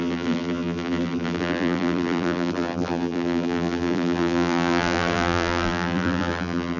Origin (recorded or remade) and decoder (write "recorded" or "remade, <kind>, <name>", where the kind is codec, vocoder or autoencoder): remade, vocoder, BigVGAN v2